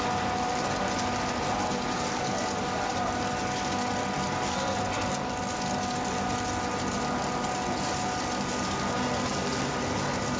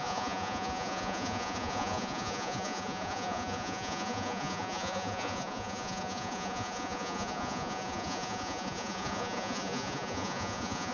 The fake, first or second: second